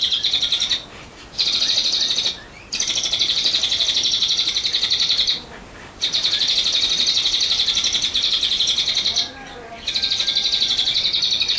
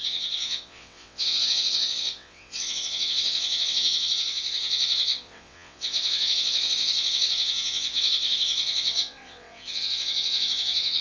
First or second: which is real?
first